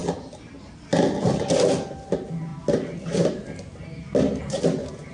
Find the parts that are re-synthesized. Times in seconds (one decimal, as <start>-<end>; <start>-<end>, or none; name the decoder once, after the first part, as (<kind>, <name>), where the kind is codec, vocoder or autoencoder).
none